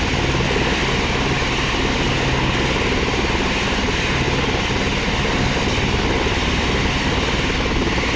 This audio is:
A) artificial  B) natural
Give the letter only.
B